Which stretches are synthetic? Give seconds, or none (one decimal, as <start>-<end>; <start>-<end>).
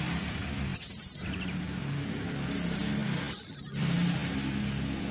0.7-1.6